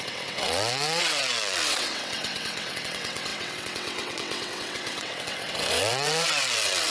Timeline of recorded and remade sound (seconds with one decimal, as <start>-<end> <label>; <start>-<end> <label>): 0.0-6.9 remade